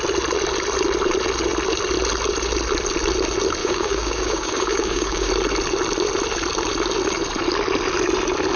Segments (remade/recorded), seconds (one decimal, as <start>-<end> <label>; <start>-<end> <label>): 0.0-3.6 recorded; 3.6-5.3 remade; 5.3-8.6 recorded